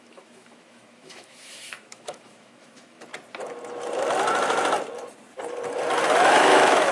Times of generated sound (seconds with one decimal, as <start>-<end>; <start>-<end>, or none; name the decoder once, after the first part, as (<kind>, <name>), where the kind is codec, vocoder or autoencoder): 0.0-3.1 (autoencoder, DAC-VAE); 6.3-6.9